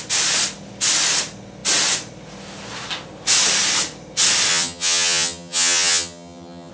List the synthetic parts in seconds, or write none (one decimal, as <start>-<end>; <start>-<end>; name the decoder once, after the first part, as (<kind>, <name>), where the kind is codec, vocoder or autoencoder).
4.5-6.7 (vocoder, HiFi-GAN)